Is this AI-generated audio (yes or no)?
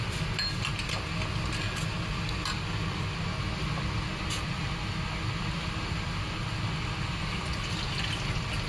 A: no